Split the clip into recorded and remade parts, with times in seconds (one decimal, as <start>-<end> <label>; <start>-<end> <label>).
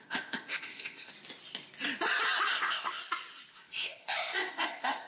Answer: 0.0-1.1 remade; 1.1-2.5 recorded; 2.5-3.0 remade; 3.0-3.5 recorded; 3.5-5.1 remade